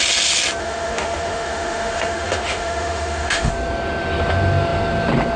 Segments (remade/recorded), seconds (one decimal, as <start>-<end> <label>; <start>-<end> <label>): 0.0-0.6 recorded; 0.6-3.5 remade; 3.5-5.4 recorded